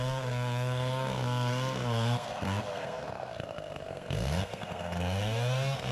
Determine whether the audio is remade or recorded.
remade